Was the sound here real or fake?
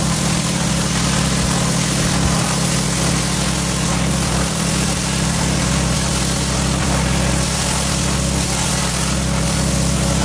fake